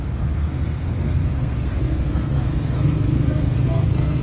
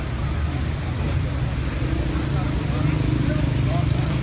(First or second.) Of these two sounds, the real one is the second